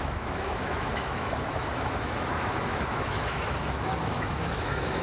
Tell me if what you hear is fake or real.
fake